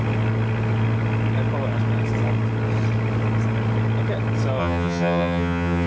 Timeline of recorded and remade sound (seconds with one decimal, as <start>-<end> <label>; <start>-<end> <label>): 0.0-4.6 recorded; 4.6-5.9 remade